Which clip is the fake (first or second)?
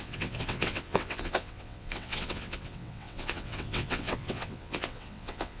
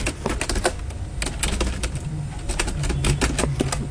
first